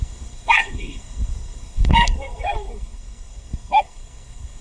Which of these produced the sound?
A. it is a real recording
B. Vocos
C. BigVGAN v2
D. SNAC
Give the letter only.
D